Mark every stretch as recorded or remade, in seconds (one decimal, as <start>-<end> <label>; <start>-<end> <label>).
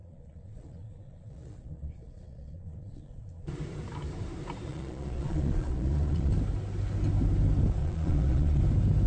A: 0.0-3.5 remade; 3.5-4.7 recorded; 4.7-6.3 remade; 6.3-7.8 recorded; 7.8-8.6 remade; 8.6-9.1 recorded